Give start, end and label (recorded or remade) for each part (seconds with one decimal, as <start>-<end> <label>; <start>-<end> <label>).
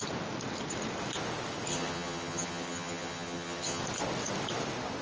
0.0-1.7 recorded; 1.7-3.8 remade; 3.8-5.0 recorded